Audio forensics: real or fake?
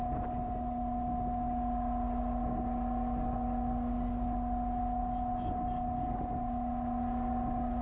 real